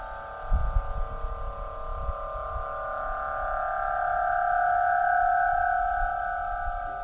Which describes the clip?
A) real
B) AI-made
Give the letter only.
A